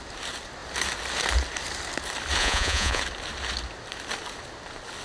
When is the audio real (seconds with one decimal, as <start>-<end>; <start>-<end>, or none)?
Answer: 0.0-2.4; 3.0-5.0